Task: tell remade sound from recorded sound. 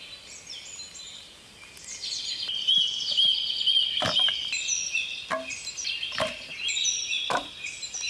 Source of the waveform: recorded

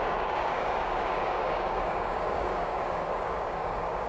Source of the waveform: remade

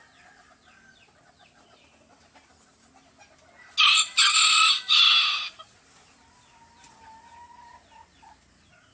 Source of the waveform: recorded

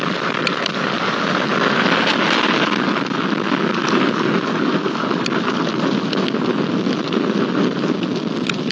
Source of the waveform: recorded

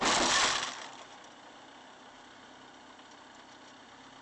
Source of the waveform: recorded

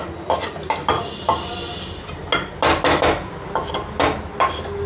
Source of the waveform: recorded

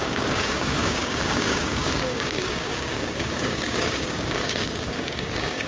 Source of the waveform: remade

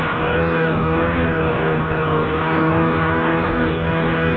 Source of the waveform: remade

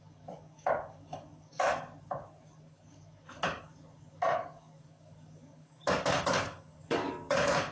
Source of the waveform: remade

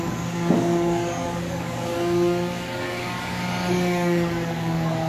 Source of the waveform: remade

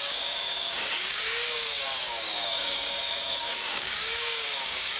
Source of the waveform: remade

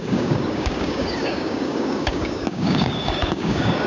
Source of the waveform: remade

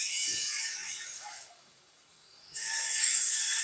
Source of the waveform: remade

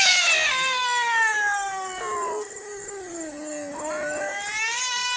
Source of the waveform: recorded